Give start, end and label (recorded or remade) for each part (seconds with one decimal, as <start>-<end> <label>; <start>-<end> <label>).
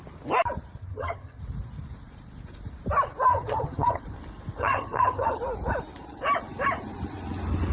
0.0-0.8 recorded; 0.8-1.4 remade; 1.4-3.3 recorded; 3.3-4.0 remade; 4.0-4.6 recorded; 4.6-5.4 remade; 5.4-7.7 recorded